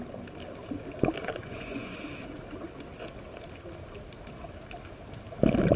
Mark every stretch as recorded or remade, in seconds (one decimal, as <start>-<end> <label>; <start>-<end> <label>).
0.0-1.2 recorded; 1.2-2.0 remade; 2.0-5.8 recorded